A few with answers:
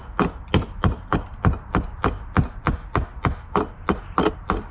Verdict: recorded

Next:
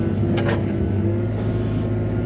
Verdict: remade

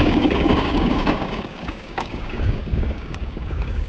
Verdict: remade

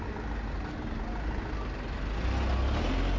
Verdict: recorded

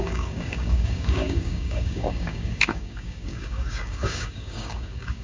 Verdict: remade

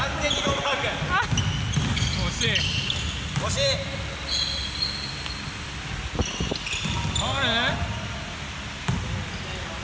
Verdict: recorded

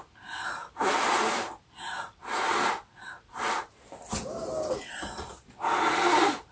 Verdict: recorded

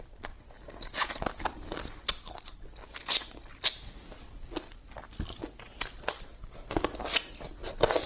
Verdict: recorded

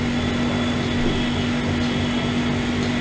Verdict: recorded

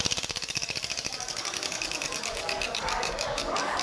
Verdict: remade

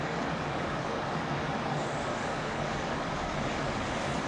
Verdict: remade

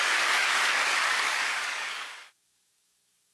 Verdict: remade